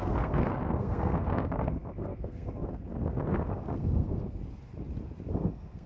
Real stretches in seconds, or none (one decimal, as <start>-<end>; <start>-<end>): 4.4-5.3